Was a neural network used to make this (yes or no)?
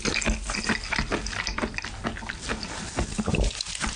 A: no